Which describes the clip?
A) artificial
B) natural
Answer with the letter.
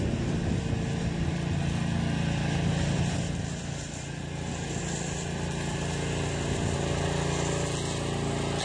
B